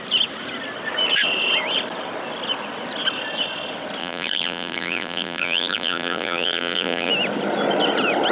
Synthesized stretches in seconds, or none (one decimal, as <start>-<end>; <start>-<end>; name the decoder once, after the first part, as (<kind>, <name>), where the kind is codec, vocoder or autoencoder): 4.0-7.1 (vocoder, BigVGAN v2)